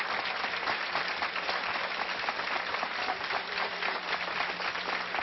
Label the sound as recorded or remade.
recorded